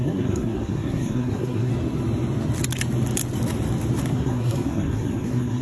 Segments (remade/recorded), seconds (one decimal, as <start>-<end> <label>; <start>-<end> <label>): 0.0-1.7 remade; 1.7-4.0 recorded; 4.0-5.6 remade